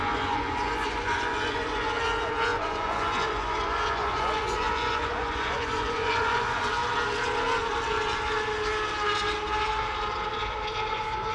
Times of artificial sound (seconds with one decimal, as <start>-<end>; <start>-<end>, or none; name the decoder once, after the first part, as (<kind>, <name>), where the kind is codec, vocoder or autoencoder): 0.0-6.8 (vocoder, Vocos); 10.9-11.3